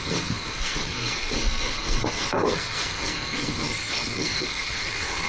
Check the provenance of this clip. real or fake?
fake